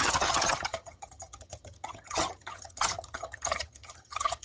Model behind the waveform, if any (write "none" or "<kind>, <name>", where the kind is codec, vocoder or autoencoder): vocoder, HiFi-GAN